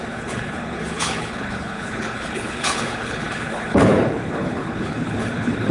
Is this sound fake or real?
fake